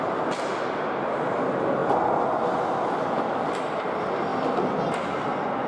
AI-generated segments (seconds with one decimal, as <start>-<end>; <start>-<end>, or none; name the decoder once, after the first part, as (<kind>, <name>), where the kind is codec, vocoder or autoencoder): none